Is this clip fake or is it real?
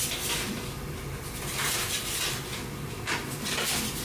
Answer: real